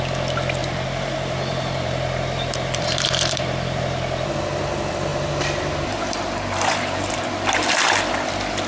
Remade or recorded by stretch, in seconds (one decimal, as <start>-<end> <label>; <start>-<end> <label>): 0.0-0.6 recorded; 0.6-3.8 remade; 3.8-5.1 recorded; 5.1-7.2 remade; 7.2-8.7 recorded